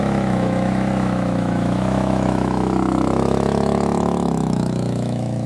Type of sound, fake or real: fake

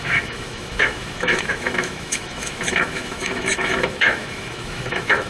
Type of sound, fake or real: fake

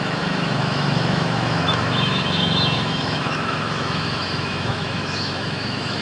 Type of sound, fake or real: fake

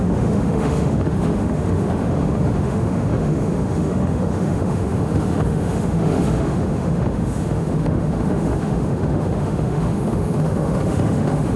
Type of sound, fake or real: fake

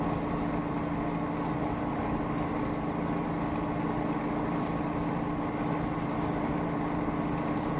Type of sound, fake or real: real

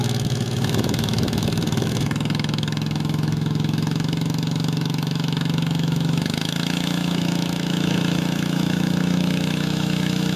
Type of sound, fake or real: fake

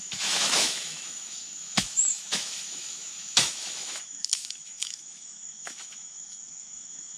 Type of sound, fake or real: fake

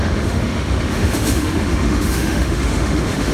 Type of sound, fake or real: fake